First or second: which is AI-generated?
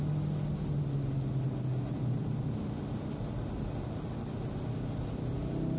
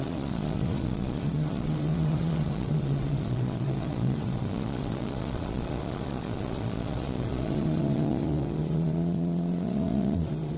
second